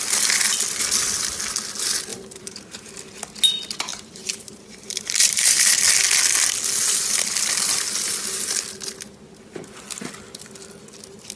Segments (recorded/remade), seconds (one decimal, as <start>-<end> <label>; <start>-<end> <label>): 0.0-2.1 recorded; 2.1-2.9 remade; 2.9-3.9 recorded; 3.9-5.7 remade; 5.7-11.4 recorded